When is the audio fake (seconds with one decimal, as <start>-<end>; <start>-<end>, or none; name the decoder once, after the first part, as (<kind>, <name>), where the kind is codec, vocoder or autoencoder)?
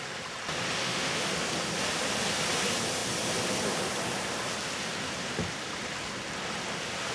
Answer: 0.8-1.4 (autoencoder, DAC-VAE)